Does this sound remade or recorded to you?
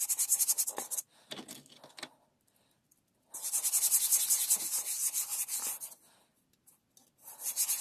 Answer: recorded